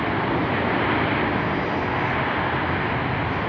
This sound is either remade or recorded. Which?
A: recorded